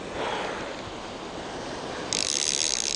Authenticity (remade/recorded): recorded